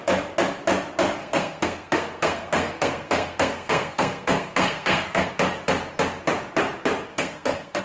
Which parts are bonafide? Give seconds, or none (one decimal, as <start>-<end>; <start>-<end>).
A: 0.0-1.2; 5.3-7.1